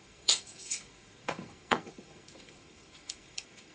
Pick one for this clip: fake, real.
fake